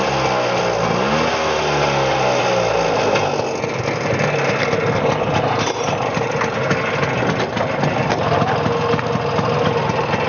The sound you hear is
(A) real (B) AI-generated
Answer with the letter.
A